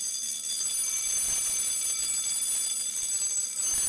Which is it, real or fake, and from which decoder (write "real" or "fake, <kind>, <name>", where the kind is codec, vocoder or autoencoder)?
real